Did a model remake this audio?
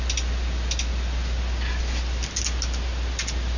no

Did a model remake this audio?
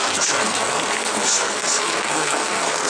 yes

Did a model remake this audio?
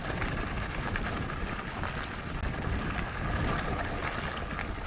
no